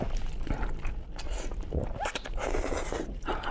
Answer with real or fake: real